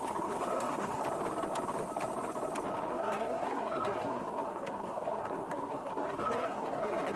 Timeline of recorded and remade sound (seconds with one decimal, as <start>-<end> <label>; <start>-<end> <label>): 0.0-1.0 remade; 1.0-2.9 recorded; 2.9-7.2 remade